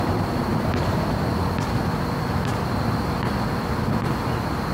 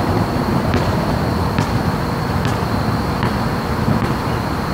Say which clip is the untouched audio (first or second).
first